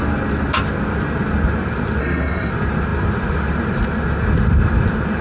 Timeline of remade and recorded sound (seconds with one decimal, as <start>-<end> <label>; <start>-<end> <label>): 0.0-2.0 recorded; 2.0-2.5 remade; 2.5-5.2 recorded